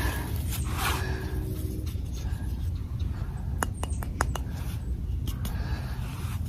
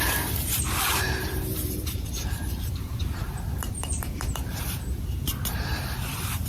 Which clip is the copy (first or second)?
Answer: second